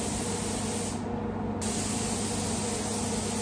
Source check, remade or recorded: recorded